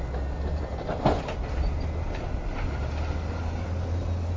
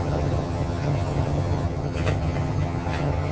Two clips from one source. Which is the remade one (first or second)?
second